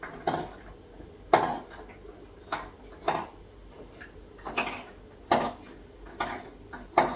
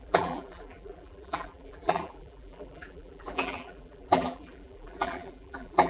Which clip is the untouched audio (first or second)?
first